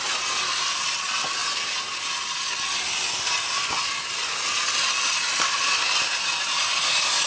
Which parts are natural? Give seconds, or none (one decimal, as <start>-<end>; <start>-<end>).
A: 0.0-7.3

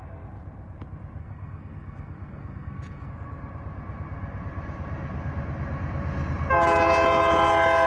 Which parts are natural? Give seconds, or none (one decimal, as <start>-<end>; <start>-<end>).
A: 0.0-1.2; 3.1-7.9

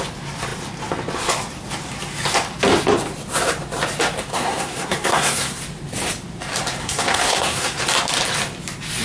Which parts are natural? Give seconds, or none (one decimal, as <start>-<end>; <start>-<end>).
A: 0.0-4.3; 5.6-6.8; 7.8-9.0

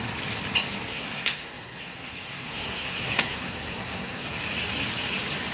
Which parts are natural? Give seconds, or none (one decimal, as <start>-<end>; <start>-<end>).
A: 0.0-0.9; 4.2-5.5